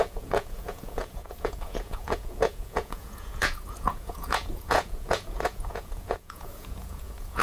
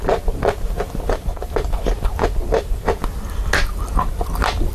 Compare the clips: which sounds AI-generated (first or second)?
first